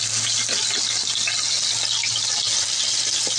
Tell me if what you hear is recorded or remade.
recorded